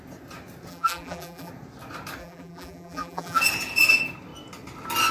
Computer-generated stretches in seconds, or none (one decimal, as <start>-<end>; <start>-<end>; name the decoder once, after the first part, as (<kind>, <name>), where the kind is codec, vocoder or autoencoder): 0.7-1.5 (vocoder, BigVGAN v2); 2.2-3.4